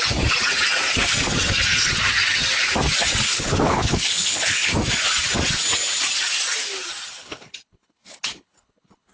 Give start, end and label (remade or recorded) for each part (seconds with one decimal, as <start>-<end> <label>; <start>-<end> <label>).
0.0-3.3 recorded; 3.3-4.7 remade; 4.7-7.2 recorded; 7.2-9.1 remade